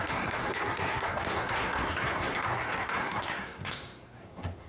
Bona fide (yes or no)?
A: no